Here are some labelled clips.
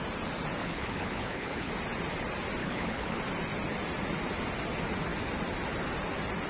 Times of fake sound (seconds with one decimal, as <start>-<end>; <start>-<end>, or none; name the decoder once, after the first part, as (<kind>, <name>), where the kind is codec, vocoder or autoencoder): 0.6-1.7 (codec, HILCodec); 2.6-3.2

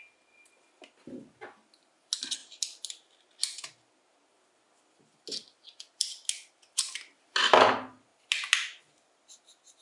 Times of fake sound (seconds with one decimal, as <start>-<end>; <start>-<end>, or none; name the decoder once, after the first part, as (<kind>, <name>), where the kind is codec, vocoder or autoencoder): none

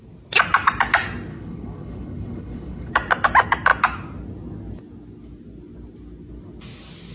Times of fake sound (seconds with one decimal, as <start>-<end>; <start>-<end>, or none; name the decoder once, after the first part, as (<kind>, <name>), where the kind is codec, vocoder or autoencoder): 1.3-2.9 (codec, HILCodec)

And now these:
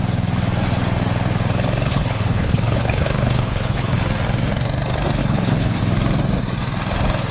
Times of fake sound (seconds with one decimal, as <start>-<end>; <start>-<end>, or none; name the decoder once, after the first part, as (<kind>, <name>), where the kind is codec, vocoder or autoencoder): 1.9-4.0 (codec, HILCodec); 5.2-5.8

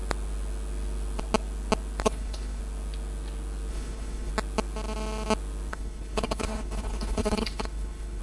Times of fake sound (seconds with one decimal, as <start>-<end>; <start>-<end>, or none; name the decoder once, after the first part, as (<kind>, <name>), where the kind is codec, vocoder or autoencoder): 2.0-2.6 (codec, HILCodec); 3.7-4.3; 5.7-8.2

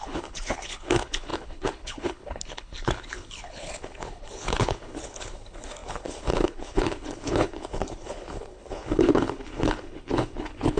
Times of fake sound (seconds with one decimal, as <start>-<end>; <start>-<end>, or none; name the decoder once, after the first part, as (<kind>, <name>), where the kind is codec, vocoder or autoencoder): 0.0-10.8 (codec, HILCodec)